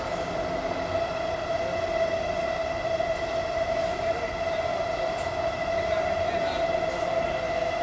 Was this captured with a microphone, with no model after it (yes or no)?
yes